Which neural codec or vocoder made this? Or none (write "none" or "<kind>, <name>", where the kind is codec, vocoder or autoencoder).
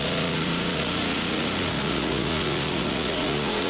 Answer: vocoder, Vocos